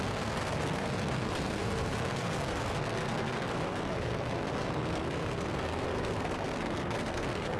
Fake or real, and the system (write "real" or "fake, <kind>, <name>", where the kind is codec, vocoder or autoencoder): fake, codec, SNAC